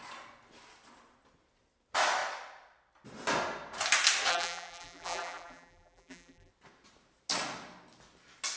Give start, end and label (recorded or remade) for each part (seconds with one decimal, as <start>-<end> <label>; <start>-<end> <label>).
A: 0.0-4.3 recorded; 4.3-6.5 remade; 6.5-8.6 recorded